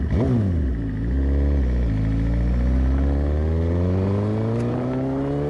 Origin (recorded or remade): recorded